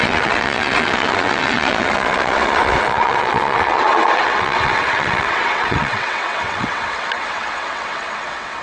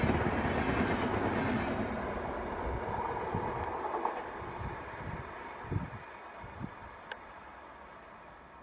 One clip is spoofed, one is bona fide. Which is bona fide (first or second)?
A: second